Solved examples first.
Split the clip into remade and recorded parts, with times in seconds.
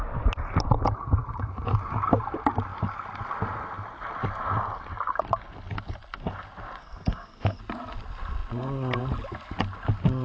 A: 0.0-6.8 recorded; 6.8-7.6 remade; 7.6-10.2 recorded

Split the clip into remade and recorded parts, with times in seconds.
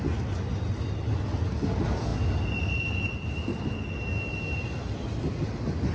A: 0.0-5.9 recorded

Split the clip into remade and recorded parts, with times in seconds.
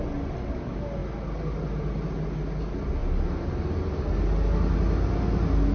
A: 0.0-5.7 recorded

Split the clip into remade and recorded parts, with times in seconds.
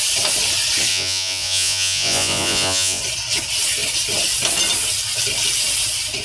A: 0.0-0.9 recorded; 0.9-3.0 remade; 3.0-6.2 recorded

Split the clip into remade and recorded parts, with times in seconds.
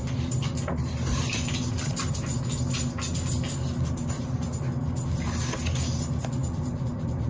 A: 0.0-6.4 recorded; 6.4-7.3 remade